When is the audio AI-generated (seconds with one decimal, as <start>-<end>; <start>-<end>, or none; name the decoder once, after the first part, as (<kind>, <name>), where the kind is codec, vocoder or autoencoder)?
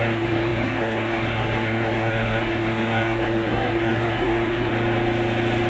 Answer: 0.0-4.7 (codec, SNAC)